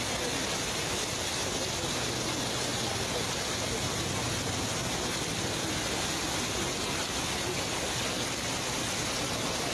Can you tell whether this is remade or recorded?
recorded